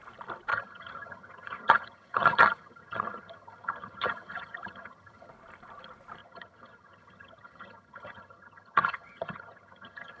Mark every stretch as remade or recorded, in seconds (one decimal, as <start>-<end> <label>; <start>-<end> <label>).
0.0-0.5 recorded; 0.5-5.3 remade; 5.3-6.2 recorded; 6.2-10.2 remade